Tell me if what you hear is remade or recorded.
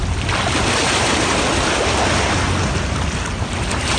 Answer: recorded